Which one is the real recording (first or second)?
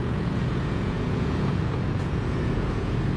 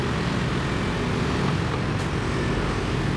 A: second